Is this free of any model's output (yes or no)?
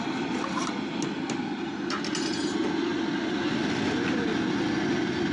yes